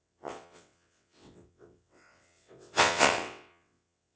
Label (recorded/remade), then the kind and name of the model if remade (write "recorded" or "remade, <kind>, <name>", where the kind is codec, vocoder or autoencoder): remade, vocoder, WaveNeXt